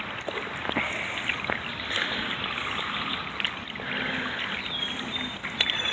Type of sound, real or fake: real